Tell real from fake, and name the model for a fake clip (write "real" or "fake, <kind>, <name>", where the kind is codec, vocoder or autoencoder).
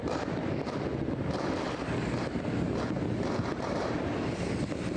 real